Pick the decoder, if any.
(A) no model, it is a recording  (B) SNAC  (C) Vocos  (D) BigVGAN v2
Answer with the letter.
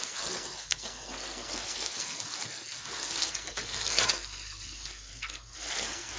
B